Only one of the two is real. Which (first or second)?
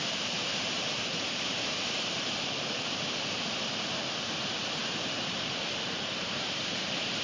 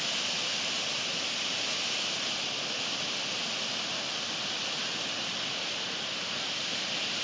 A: second